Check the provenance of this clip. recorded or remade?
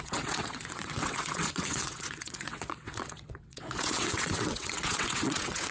remade